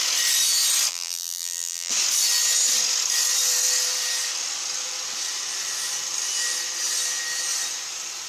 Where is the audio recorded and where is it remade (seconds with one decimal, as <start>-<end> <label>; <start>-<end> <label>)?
0.0-0.9 recorded; 0.9-1.9 remade; 1.9-8.3 recorded